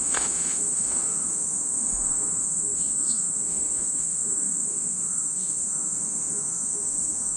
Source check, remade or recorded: remade